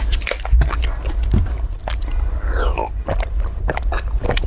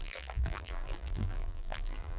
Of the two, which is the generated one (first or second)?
second